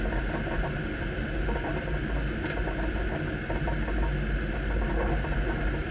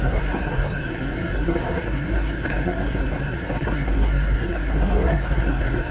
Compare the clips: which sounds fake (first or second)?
second